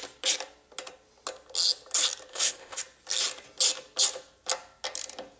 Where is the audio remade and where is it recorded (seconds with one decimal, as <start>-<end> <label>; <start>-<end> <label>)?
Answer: 0.0-2.3 recorded; 2.3-2.8 remade; 2.8-5.4 recorded